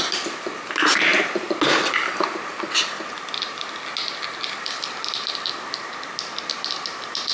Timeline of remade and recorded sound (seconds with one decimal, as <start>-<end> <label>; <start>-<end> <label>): 0.0-7.3 recorded